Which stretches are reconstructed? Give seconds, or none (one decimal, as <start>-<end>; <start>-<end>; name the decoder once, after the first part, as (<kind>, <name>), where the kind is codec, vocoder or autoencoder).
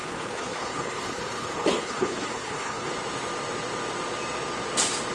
0.0-2.9 (codec, HILCodec)